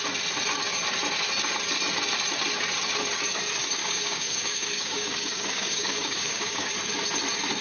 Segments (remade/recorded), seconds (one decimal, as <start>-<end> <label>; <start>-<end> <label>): 0.0-3.8 recorded; 3.8-6.7 remade; 6.7-7.6 recorded